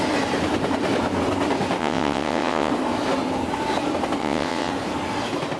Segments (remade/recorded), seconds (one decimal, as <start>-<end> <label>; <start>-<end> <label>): 0.0-1.8 recorded; 1.8-2.7 remade; 2.7-4.2 recorded; 4.2-4.7 remade; 4.7-5.6 recorded